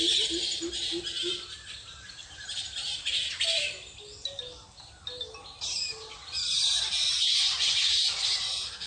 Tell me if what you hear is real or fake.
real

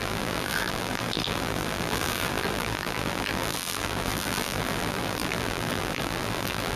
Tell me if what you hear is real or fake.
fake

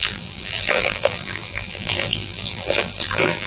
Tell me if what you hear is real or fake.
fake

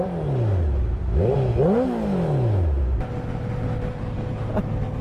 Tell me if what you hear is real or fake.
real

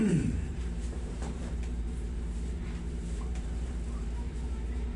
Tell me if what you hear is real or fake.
fake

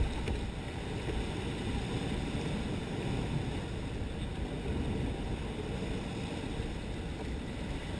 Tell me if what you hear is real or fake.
real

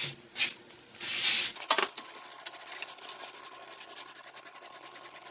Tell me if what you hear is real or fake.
real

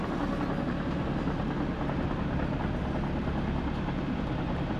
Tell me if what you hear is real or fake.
real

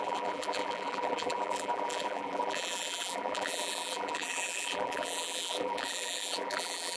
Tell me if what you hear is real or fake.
fake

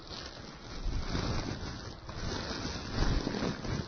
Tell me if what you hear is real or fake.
real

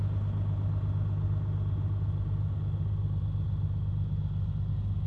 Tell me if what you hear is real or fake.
real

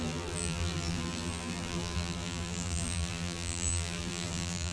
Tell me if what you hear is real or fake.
fake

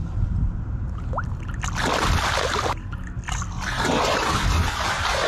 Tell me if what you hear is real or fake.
real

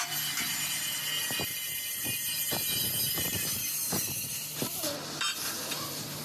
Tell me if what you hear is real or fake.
fake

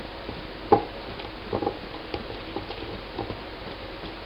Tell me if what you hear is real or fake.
fake